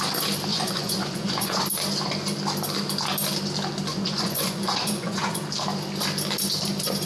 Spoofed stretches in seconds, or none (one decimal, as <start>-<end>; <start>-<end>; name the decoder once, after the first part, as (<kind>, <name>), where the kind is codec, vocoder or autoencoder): 0.5-1.6 (vocoder, Vocos); 3.9-5.4